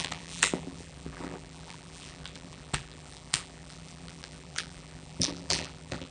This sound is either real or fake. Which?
fake